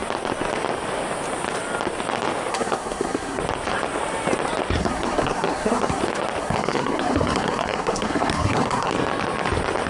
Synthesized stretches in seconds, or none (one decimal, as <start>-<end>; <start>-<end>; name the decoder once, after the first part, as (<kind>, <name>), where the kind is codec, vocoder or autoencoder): 2.5-3.4 (codec, SNAC); 4.8-6.0; 6.4-8.9